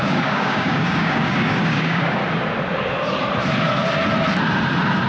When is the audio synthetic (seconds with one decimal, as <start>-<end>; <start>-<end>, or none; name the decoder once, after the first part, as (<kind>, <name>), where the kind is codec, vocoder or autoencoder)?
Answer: 0.0-2.2 (codec, DAC)